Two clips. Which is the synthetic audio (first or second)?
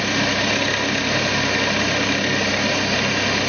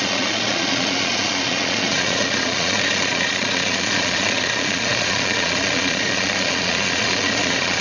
second